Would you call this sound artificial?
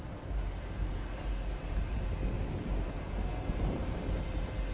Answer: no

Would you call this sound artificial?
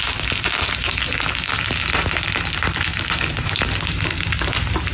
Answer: no